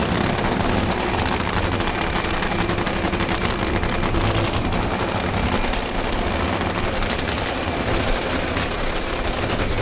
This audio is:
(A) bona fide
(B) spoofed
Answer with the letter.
A